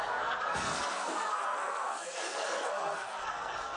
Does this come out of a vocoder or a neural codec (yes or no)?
yes